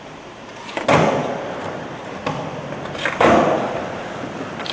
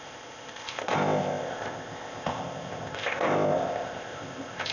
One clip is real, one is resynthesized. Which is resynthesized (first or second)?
second